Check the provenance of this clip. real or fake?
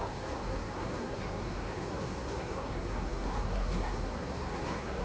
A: fake